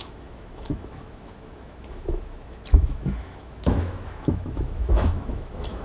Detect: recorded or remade remade